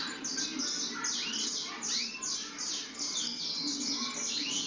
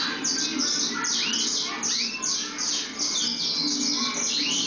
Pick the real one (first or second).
second